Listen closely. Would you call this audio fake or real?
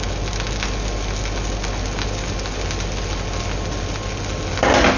real